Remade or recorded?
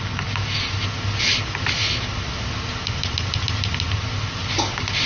recorded